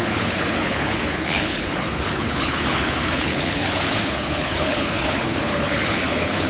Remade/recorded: remade